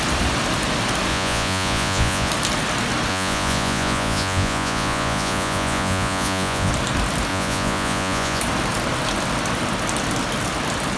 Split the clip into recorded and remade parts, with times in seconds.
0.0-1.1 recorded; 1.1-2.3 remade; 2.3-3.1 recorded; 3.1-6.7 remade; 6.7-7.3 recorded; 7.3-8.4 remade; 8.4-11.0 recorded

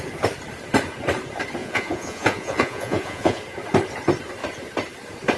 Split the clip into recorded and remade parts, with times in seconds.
0.0-1.6 recorded; 1.6-3.4 remade; 3.4-5.4 recorded

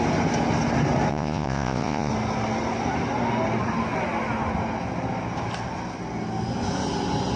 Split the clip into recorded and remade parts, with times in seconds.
0.0-1.1 recorded; 1.1-2.1 remade; 2.1-7.4 recorded

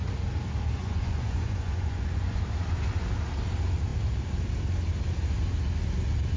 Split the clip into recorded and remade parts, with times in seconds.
0.0-0.8 recorded; 0.8-2.4 remade; 2.4-6.4 recorded

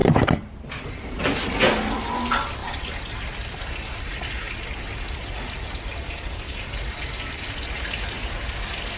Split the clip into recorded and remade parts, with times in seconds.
0.0-9.0 recorded

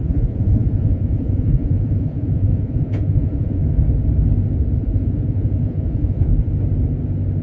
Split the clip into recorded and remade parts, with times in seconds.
0.0-3.6 remade; 3.6-4.8 recorded; 4.8-6.3 remade; 6.3-7.4 recorded

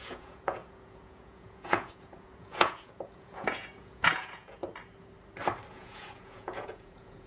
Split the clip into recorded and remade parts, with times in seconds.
0.0-4.6 remade; 4.6-5.7 recorded; 5.7-7.3 remade